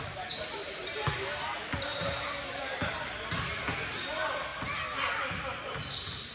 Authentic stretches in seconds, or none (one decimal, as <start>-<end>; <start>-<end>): 0.0-6.3